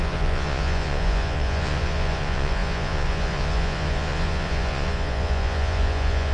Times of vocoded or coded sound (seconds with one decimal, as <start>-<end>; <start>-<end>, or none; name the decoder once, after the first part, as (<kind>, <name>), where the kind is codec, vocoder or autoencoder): 0.0-6.3 (vocoder, Vocos)